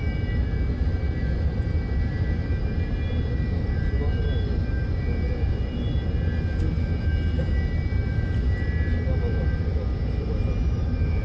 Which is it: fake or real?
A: real